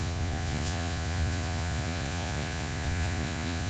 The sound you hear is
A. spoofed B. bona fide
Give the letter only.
A